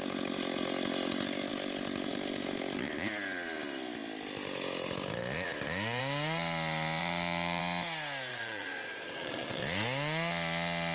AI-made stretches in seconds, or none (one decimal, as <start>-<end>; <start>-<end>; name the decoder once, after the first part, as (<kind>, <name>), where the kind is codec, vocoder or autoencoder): 7.0-7.6 (vocoder, Vocos); 8.3-9.6